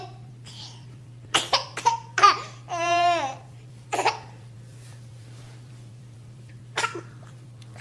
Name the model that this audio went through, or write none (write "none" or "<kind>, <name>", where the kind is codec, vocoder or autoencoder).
vocoder, BigVGAN v2